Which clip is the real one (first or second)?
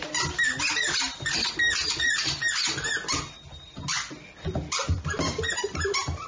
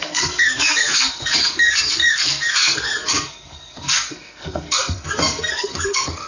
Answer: first